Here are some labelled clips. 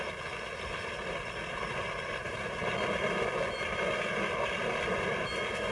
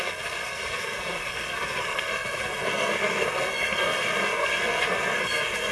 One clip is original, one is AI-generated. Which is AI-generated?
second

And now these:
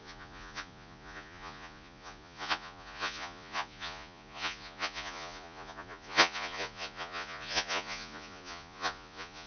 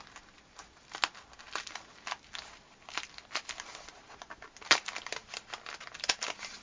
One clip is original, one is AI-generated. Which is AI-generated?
first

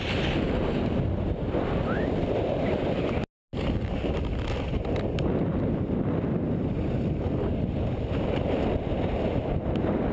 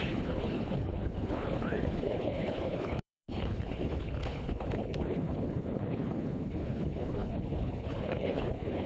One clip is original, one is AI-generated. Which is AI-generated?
second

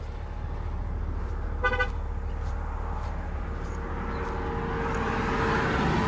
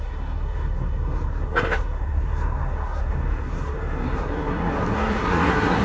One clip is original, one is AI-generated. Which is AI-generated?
second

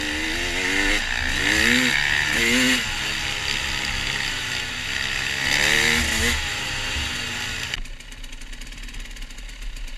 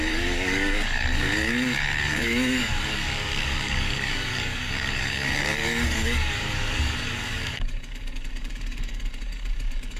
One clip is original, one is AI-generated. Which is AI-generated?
second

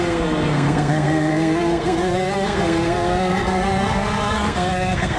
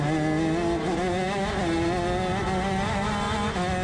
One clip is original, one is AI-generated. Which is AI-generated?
first